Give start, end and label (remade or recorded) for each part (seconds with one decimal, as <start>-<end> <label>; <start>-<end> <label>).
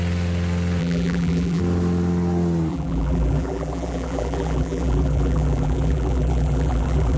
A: 0.0-0.8 recorded; 0.8-1.6 remade; 1.6-2.7 recorded; 2.7-7.2 remade